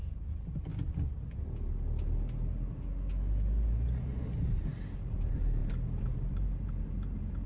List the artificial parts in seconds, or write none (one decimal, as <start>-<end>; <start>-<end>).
0.0-0.7; 2.7-3.1; 3.7-7.5